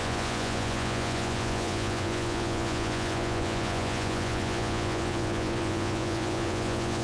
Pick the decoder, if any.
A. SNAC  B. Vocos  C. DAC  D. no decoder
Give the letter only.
B